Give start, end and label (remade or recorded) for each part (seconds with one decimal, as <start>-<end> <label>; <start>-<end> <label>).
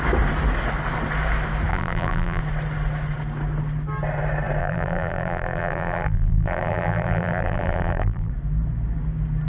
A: 0.0-1.7 recorded; 1.7-2.4 remade; 2.4-4.6 recorded; 4.6-8.3 remade; 8.3-9.5 recorded